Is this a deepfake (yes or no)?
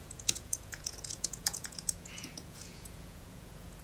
yes